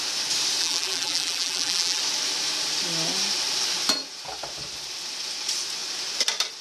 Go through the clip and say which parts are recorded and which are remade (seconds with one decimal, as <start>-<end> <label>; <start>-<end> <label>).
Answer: 0.0-0.6 recorded; 0.6-2.0 remade; 2.0-6.6 recorded

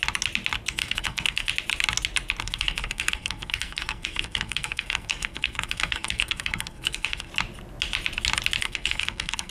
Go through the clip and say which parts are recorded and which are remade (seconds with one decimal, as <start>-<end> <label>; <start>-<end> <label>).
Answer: 0.0-0.7 recorded; 0.7-1.5 remade; 1.5-2.4 recorded; 2.4-7.3 remade; 7.3-8.6 recorded; 8.6-9.5 remade

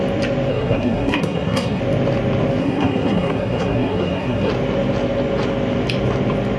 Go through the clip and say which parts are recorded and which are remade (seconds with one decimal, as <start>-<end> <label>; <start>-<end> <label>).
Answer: 0.0-0.5 recorded; 0.5-1.8 remade; 1.8-2.6 recorded; 2.6-4.5 remade; 4.5-6.6 recorded

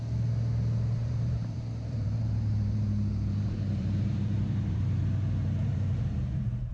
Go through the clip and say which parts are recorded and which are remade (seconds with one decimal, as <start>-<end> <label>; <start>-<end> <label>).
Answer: 0.0-1.0 recorded; 1.0-5.0 remade; 5.0-5.6 recorded; 5.6-6.7 remade

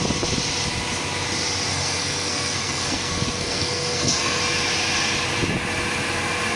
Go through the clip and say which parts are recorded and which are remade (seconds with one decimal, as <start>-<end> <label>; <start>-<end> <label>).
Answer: 0.0-1.7 recorded; 1.7-4.4 remade; 4.4-6.6 recorded